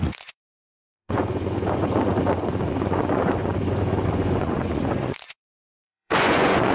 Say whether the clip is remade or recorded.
remade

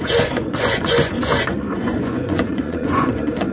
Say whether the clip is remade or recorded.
remade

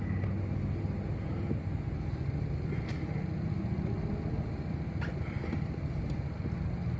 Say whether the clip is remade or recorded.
recorded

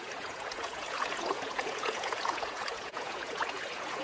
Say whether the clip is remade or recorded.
remade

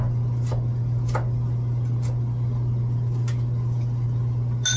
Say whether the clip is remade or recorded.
recorded